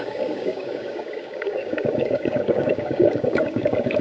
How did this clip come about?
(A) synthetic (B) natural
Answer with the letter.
A